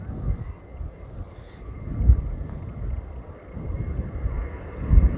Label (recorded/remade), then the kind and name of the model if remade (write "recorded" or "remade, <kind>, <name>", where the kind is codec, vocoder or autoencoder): recorded